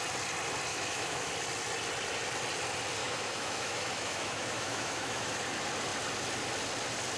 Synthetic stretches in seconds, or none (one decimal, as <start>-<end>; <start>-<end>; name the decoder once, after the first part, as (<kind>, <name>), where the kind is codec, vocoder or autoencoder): 0.7-1.3 (autoencoder, DAC-VAE); 3.0-5.3